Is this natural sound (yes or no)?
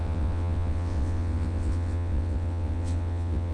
no